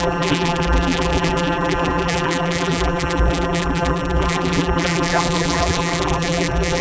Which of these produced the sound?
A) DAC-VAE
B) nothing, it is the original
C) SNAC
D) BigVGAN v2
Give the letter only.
D